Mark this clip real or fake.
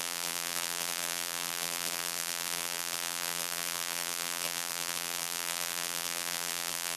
fake